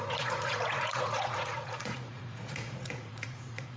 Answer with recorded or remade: remade